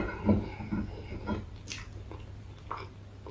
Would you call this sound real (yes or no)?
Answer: yes